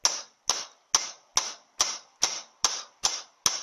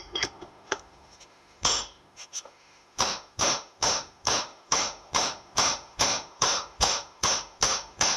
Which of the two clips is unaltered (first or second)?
first